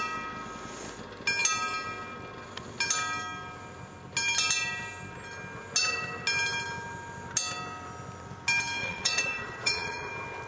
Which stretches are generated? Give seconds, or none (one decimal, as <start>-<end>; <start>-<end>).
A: 8.8-10.1